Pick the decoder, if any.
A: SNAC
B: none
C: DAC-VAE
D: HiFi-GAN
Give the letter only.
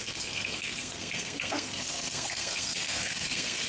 A